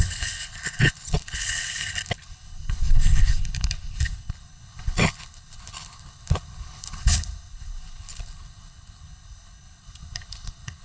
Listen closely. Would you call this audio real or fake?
fake